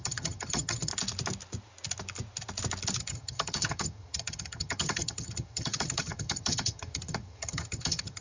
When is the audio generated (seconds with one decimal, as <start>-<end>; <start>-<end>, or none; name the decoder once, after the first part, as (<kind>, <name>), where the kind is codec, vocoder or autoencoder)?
0.0-0.9 (vocoder, HiFi-GAN); 3.0-8.2